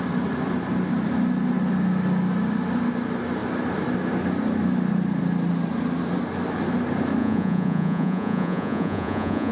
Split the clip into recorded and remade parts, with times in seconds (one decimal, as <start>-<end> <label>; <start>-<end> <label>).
0.0-7.2 recorded; 7.2-9.5 remade